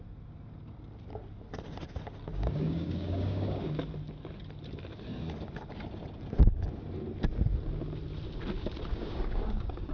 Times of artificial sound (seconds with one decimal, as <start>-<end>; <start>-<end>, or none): 2.3-3.7; 8.9-9.9